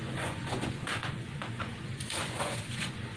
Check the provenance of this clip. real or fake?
fake